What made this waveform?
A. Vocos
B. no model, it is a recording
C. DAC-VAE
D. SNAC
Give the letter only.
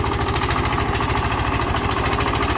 B